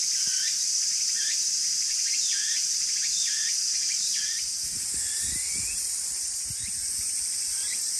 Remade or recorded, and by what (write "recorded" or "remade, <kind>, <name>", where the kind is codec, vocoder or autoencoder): recorded